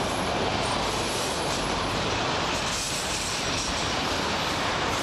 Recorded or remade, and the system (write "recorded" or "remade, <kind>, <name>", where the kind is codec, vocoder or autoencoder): remade, vocoder, BigVGAN v2